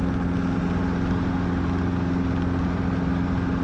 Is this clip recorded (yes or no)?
yes